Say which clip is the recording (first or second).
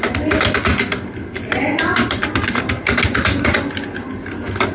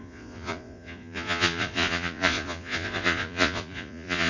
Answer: first